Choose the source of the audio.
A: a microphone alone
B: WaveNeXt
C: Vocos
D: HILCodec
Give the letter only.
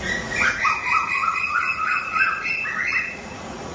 C